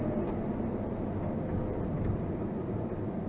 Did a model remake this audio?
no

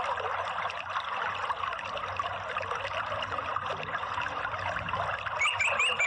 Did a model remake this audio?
no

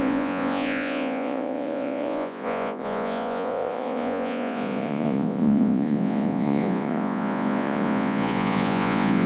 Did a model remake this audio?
yes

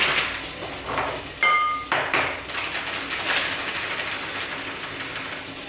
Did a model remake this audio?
no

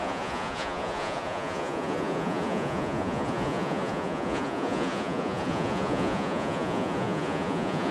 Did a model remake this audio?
yes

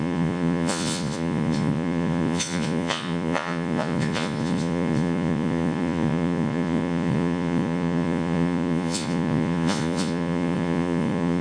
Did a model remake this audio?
yes